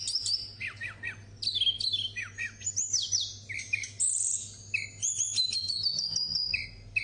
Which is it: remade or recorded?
recorded